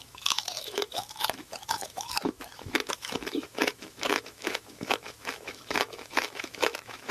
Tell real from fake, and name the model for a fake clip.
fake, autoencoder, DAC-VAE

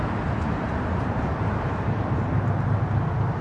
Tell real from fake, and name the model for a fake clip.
real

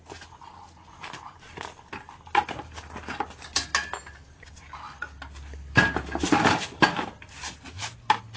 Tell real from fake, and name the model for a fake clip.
real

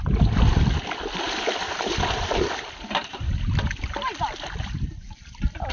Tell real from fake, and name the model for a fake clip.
fake, vocoder, BigVGAN v2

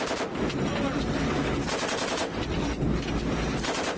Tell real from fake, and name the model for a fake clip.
real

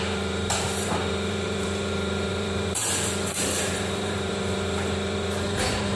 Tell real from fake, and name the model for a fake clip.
fake, vocoder, BigVGAN v2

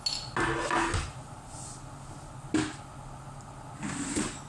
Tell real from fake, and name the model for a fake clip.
real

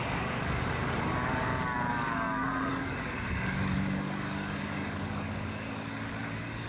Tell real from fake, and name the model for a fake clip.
fake, codec, DAC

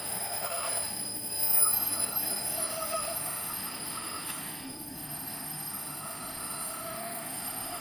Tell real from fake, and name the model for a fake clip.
fake, autoencoder, DAC-VAE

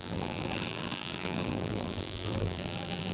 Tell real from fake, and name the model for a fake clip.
fake, vocoder, BigVGAN v2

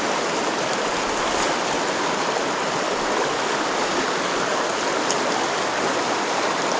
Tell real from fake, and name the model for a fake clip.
real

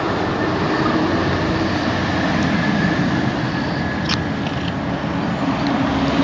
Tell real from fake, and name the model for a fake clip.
real